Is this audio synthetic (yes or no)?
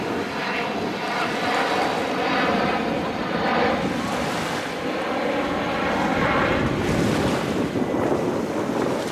no